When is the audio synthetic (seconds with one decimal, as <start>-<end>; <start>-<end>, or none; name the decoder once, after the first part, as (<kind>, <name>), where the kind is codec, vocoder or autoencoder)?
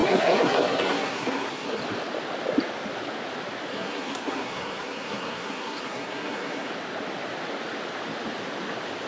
0.0-1.8 (codec, SNAC); 3.7-6.7